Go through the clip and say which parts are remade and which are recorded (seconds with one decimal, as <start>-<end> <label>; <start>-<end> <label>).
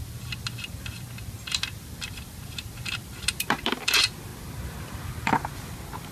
0.0-6.1 remade